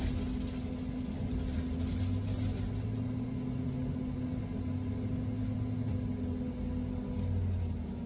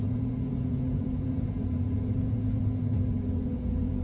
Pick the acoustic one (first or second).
first